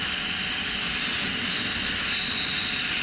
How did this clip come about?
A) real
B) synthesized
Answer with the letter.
A